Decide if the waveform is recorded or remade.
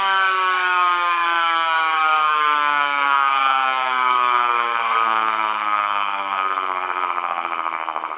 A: remade